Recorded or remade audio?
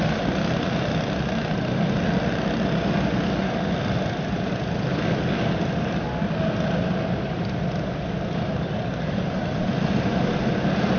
recorded